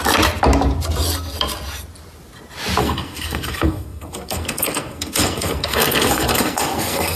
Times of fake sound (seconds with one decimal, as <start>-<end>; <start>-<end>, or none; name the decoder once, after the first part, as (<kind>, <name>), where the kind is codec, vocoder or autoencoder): 2.8-7.2 (codec, SNAC)